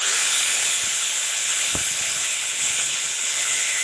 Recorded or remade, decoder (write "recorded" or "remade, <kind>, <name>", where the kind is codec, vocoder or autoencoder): remade, codec, HILCodec